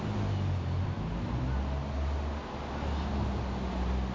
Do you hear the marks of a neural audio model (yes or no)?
no